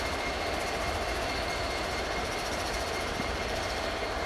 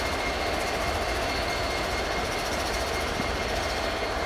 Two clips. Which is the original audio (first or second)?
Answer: second